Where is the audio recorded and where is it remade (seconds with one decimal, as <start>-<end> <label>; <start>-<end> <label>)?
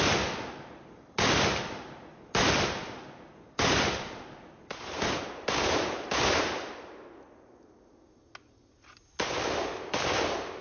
0.0-10.6 recorded